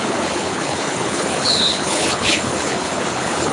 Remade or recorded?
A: remade